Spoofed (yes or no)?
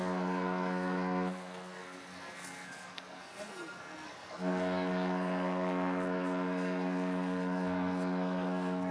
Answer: yes